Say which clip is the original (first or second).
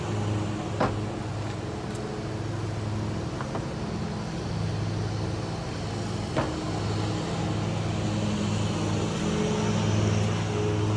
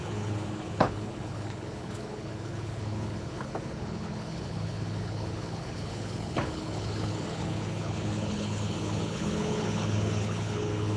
first